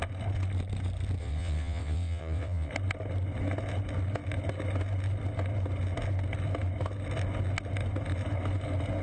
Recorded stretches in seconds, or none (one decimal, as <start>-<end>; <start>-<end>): 0.0-1.2; 2.7-9.0

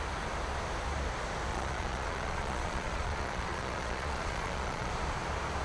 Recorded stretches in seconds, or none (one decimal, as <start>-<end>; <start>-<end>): 0.0-1.5; 4.9-5.6